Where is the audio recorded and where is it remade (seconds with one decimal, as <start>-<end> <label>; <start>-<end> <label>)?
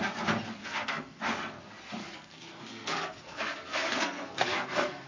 0.0-0.6 recorded; 0.6-1.2 remade; 1.2-2.0 recorded; 2.0-5.1 remade